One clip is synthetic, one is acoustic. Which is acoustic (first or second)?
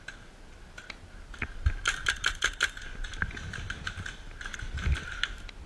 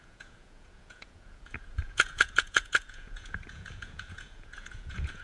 first